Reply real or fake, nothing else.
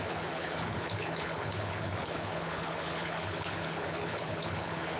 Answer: fake